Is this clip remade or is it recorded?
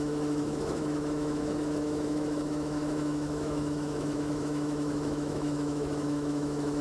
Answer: remade